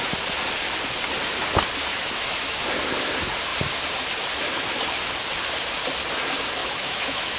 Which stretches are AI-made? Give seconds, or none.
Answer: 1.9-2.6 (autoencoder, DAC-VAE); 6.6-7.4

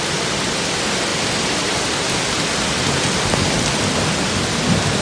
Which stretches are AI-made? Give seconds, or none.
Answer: none

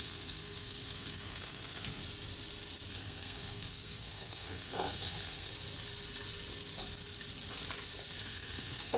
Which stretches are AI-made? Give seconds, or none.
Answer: 0.0-2.0 (codec, SNAC); 2.9-5.5; 8.2-9.0

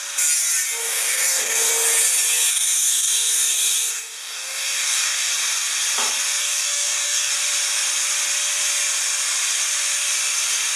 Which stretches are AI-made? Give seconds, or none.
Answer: 0.8-1.7 (codec, DAC); 2.5-5.3; 6.4-7.3

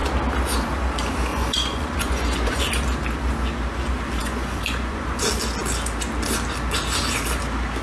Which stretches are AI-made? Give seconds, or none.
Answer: 1.3-2.6 (vocoder, Vocos); 4.2-5.2

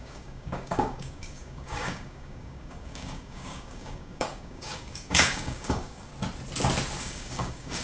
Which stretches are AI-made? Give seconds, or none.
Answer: 0.0-6.1 (codec, DAC); 7.0-7.8

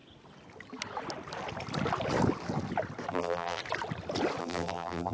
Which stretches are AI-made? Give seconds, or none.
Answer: 3.1-3.6 (vocoder, BigVGAN v2); 4.4-5.1